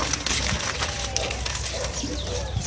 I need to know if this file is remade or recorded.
recorded